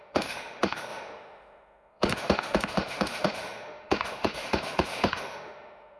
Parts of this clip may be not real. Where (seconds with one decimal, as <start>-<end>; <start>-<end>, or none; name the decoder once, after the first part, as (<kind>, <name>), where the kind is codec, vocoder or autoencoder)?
0.0-6.0 (autoencoder, DAC-VAE)